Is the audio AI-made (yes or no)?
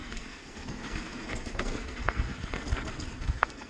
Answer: yes